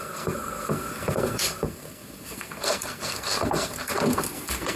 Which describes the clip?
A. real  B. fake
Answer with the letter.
B